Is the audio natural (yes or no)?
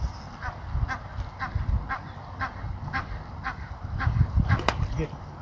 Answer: yes